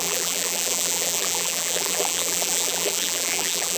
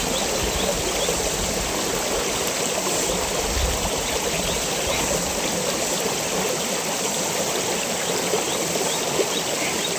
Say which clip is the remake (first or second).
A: first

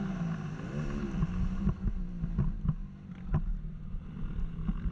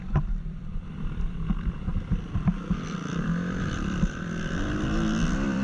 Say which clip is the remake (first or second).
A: second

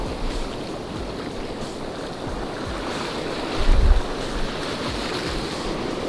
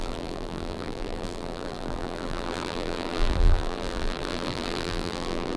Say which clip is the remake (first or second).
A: second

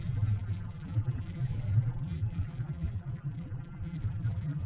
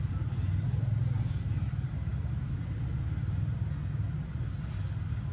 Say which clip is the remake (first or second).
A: first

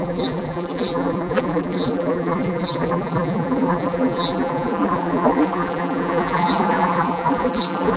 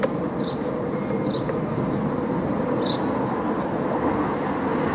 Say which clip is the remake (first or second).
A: first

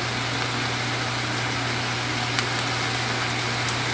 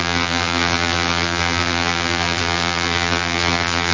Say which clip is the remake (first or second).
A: second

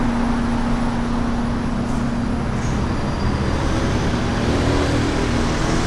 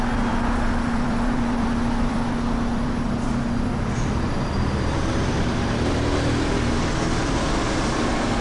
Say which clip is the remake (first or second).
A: second